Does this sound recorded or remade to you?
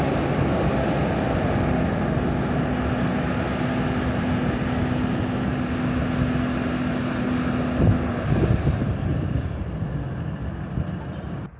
recorded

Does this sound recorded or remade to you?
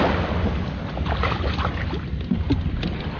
recorded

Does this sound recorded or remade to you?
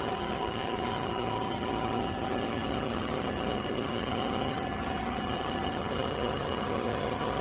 remade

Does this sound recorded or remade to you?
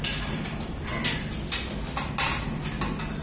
recorded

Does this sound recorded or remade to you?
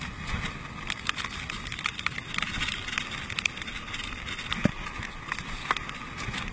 recorded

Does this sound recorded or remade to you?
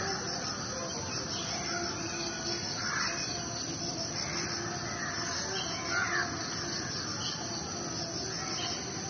recorded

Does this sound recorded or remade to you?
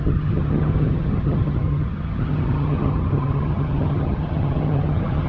remade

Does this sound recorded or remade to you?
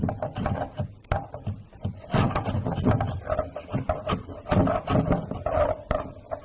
recorded